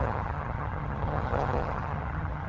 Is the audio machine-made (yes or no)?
yes